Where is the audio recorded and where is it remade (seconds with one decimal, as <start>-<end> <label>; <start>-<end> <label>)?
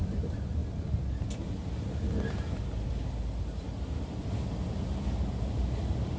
0.0-0.6 remade; 0.6-4.0 recorded; 4.0-6.2 remade